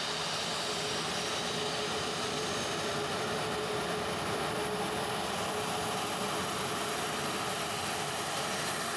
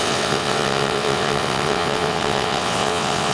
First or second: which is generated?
second